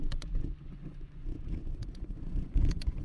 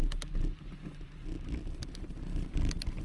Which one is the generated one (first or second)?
first